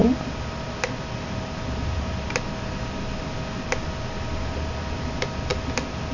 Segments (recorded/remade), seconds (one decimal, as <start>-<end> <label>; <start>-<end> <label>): 0.0-6.1 recorded